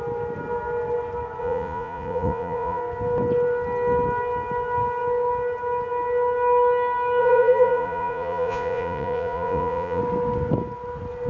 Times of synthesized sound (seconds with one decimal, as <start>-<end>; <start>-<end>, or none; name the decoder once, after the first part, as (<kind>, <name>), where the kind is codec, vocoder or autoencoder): 1.4-2.8 (vocoder, Vocos); 7.2-10.0